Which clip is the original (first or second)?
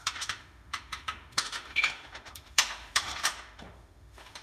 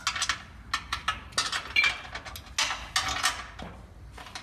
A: second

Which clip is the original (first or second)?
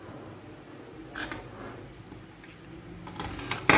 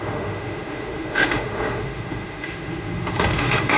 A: first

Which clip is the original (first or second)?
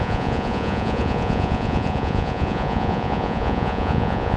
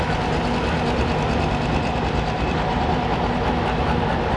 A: second